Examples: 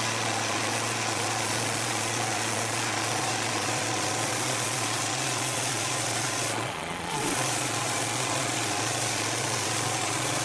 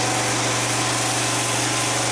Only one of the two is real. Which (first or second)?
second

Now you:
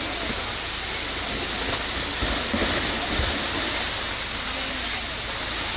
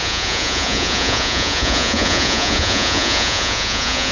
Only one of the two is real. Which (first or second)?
first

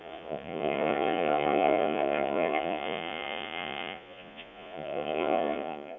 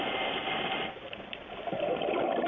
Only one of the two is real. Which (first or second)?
second